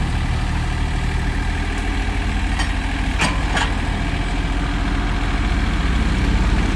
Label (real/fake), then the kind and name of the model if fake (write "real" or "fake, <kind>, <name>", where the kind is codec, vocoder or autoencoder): real